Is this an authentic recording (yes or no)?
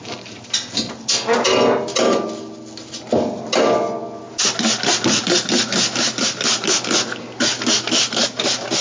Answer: yes